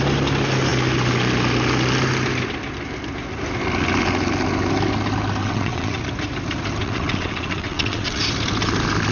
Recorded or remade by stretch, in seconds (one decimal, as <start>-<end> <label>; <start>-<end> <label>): 0.0-5.4 recorded; 5.4-6.0 remade; 6.0-6.8 recorded; 6.8-8.2 remade; 8.2-9.1 recorded